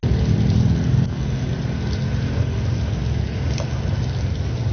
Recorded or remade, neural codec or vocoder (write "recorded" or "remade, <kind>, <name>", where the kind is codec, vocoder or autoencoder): recorded